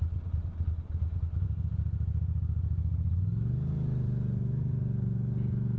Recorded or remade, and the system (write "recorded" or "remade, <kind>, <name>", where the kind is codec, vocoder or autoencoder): recorded